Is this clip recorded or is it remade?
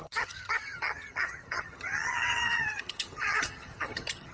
remade